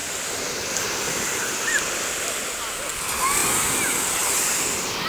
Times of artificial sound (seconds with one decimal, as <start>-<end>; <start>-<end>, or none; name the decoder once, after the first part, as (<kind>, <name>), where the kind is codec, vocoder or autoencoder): 0.0-2.7 (vocoder, BigVGAN v2)